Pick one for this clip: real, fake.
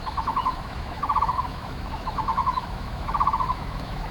fake